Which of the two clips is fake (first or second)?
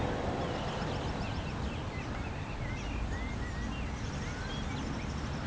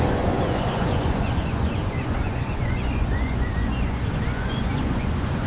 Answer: second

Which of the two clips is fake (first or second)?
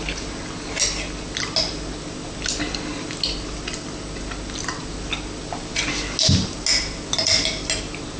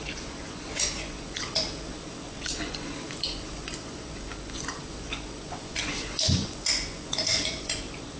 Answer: second